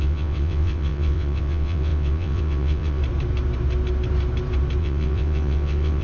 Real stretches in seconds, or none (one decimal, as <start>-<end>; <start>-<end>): 3.0-4.8